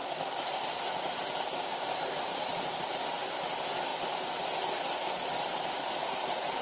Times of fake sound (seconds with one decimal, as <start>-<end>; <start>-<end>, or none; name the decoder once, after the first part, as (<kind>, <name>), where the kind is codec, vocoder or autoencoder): 2.3-2.9 (vocoder, BigVGAN v2)